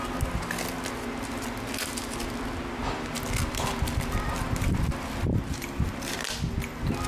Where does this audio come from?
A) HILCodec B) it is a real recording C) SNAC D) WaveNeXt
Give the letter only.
B